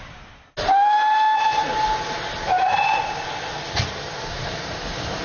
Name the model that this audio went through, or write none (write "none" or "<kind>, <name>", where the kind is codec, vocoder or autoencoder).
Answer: none